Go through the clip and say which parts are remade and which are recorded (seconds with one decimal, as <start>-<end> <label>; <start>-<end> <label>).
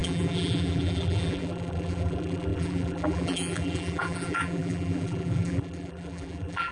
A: 0.0-6.7 remade